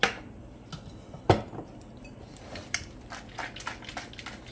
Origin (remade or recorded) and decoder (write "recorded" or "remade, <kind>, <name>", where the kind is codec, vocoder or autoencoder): recorded